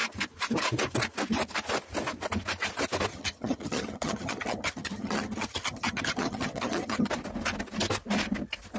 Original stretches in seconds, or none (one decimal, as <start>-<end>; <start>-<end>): 0.0-3.1; 7.1-8.8